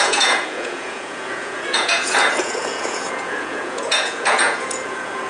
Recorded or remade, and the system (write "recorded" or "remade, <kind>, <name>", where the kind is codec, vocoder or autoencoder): remade, vocoder, Vocos